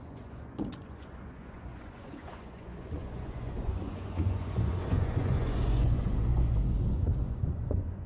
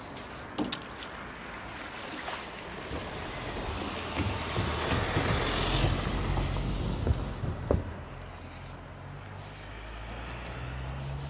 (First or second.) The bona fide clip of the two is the second